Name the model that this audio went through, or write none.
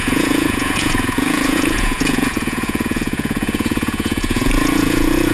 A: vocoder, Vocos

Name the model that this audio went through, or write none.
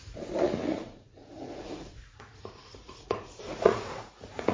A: vocoder, Vocos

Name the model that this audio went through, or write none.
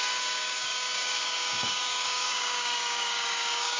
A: codec, DAC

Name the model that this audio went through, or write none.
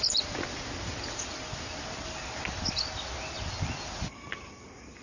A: none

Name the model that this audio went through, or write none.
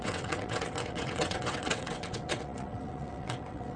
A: vocoder, WaveNeXt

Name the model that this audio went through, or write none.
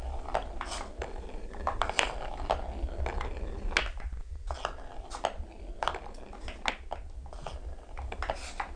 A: none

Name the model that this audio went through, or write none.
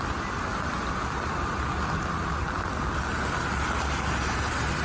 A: none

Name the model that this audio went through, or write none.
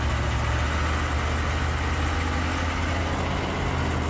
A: none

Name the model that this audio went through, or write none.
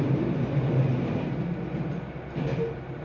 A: none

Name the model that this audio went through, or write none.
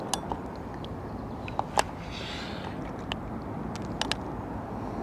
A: none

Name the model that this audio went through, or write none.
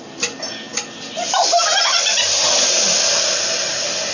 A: vocoder, BigVGAN v2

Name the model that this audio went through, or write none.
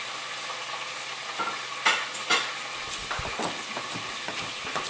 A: none